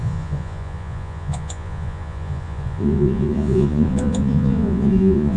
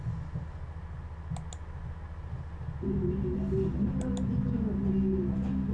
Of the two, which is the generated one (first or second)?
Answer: first